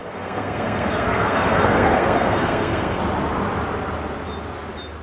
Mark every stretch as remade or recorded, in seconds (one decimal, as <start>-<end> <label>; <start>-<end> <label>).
0.0-3.0 remade; 3.0-5.0 recorded